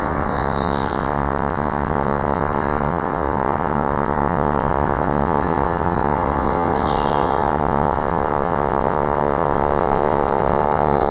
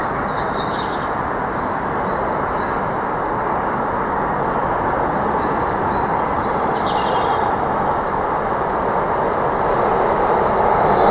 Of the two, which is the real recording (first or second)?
second